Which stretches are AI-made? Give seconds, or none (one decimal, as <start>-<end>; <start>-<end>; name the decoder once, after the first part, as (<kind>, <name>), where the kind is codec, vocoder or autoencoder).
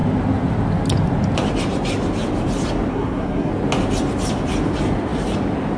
2.9-3.5 (codec, SNAC)